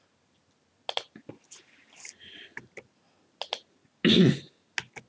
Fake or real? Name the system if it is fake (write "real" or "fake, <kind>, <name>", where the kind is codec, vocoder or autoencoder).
real